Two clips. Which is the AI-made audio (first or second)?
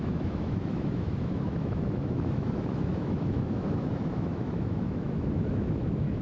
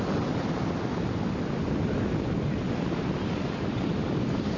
first